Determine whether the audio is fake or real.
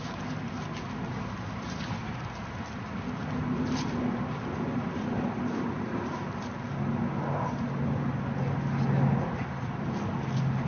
real